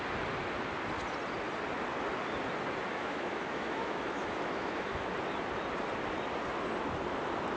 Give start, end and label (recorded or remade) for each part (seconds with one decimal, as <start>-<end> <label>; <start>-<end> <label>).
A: 0.0-2.9 recorded; 2.9-5.1 remade; 5.1-7.6 recorded